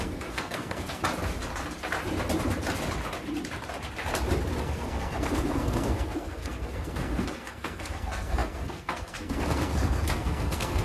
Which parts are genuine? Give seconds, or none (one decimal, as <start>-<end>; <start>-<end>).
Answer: 1.0-4.6